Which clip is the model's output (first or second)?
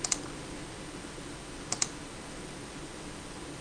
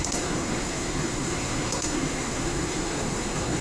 second